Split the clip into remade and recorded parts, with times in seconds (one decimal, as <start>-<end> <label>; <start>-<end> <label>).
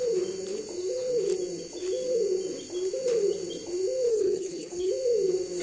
0.0-4.1 recorded; 4.1-4.9 remade; 4.9-5.6 recorded